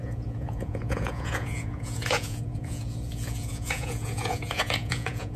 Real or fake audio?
fake